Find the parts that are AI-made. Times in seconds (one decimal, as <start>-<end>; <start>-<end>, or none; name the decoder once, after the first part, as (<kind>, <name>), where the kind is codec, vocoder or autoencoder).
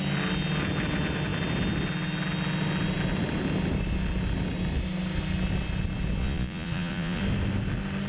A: 6.2-7.2 (vocoder, Vocos)